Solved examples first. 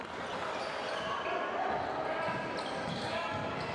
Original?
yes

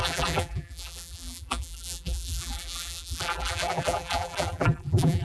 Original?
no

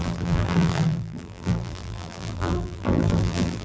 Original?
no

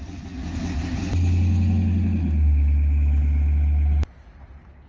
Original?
yes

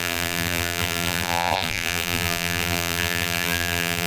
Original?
no